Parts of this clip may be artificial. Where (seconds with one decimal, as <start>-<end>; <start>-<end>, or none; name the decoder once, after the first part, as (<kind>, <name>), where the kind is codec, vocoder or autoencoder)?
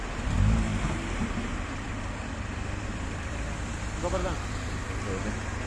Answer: none